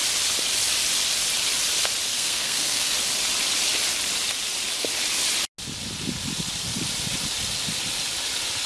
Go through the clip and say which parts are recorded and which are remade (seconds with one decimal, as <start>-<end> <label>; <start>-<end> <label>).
0.0-2.1 recorded; 2.1-2.9 remade; 2.9-8.7 recorded